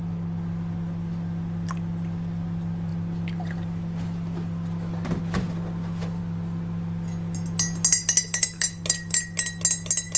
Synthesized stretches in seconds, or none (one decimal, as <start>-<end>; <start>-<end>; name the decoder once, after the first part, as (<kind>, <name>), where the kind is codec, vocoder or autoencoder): none